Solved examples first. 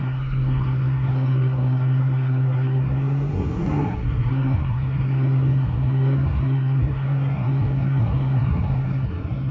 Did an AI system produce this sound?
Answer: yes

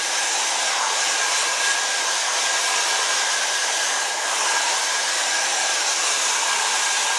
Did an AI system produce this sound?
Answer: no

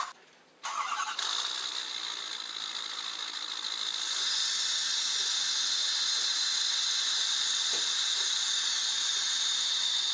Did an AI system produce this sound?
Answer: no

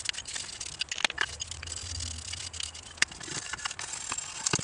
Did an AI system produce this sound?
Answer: no